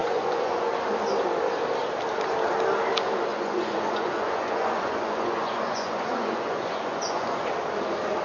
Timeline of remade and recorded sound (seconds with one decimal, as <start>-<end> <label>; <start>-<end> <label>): 0.0-0.7 remade; 0.7-3.3 recorded; 3.3-7.5 remade; 7.5-8.2 recorded